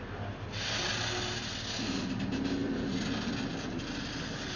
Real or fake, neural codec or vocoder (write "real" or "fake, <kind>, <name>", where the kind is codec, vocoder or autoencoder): real